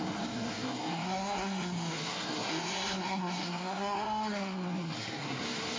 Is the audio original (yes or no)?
no